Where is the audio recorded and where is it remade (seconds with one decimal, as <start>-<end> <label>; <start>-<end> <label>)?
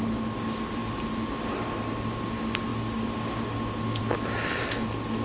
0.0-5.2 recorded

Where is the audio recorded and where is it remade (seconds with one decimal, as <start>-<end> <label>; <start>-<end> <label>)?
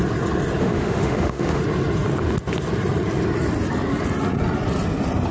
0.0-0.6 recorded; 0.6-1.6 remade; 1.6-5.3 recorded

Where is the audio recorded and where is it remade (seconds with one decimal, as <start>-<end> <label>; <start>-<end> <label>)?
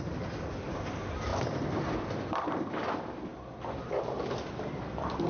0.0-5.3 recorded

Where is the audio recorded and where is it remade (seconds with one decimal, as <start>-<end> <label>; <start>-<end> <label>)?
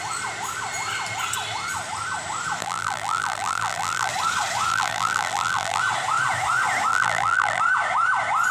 0.0-2.6 recorded; 2.6-4.1 remade; 4.1-4.7 recorded; 4.7-5.8 remade; 5.8-6.9 recorded; 6.9-7.6 remade; 7.6-8.5 recorded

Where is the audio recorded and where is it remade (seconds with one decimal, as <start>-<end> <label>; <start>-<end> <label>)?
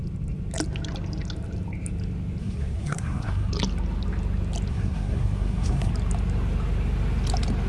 0.0-2.4 recorded; 2.4-3.5 remade; 3.5-4.7 recorded; 4.7-5.9 remade; 5.9-7.7 recorded